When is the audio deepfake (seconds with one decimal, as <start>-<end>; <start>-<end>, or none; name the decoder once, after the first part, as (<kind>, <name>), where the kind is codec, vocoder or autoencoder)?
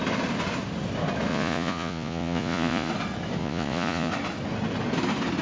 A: 1.3-2.9 (vocoder, Vocos); 3.4-4.1